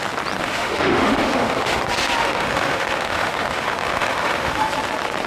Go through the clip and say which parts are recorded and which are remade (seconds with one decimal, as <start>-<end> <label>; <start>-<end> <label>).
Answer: 0.0-0.4 recorded; 0.4-1.8 remade; 1.8-2.2 recorded; 2.2-4.7 remade; 4.7-5.3 recorded